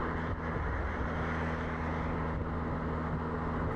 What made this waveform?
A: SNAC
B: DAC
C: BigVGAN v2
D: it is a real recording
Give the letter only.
D